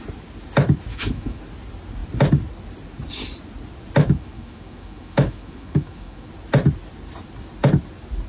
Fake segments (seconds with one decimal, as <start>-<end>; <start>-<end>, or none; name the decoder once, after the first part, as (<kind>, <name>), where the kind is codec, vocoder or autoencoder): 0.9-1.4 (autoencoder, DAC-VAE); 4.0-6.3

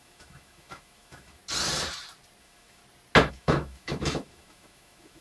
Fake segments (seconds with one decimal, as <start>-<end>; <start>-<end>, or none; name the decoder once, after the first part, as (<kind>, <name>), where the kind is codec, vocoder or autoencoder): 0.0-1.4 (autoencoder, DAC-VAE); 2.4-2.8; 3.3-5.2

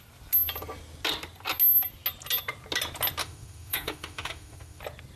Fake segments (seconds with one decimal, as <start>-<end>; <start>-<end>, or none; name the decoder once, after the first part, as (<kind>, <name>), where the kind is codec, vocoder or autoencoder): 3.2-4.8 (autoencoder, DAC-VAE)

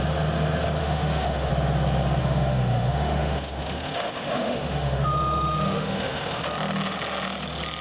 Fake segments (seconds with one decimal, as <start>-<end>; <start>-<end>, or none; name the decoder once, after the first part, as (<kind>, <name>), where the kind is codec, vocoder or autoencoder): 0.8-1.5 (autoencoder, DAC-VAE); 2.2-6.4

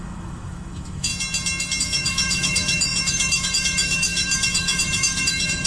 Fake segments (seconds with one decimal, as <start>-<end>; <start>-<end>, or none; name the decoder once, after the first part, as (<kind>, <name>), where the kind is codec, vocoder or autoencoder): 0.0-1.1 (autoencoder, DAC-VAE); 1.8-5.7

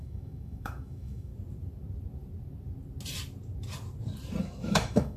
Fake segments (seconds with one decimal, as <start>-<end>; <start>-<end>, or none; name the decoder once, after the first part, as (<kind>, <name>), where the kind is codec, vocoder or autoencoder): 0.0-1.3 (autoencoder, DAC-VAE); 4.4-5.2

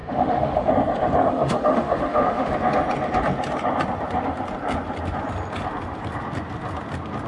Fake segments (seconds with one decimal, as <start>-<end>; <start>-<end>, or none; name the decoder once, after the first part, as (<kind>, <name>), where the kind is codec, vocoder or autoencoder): 0.0-0.7 (autoencoder, DAC-VAE); 1.3-2.5

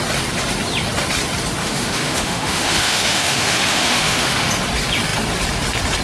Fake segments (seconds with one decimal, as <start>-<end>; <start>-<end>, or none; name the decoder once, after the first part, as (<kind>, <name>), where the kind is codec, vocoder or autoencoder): 1.6-4.5 (autoencoder, DAC-VAE)